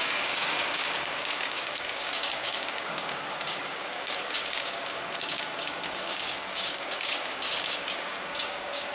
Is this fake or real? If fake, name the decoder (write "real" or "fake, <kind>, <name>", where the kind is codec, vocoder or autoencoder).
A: fake, codec, DAC